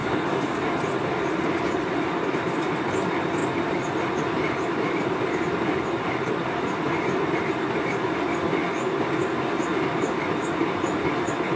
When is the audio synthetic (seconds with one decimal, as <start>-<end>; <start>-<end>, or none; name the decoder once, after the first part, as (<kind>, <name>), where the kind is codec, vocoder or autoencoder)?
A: 0.0-0.6 (codec, DAC)